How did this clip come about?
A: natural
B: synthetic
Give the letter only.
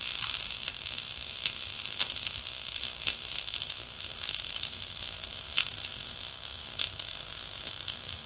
B